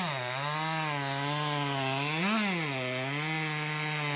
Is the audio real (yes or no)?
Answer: yes